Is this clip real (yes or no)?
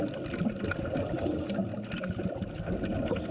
yes